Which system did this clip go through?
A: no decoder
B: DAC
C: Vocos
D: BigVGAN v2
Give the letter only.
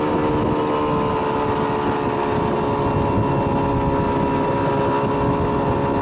A